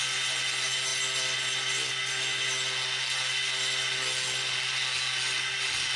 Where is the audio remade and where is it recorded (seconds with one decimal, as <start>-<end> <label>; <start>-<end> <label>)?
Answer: 0.0-6.0 recorded